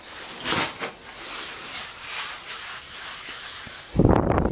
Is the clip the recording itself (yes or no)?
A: yes